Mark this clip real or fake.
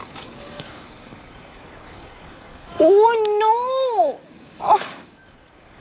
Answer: fake